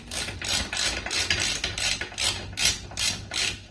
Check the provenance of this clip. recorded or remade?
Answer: recorded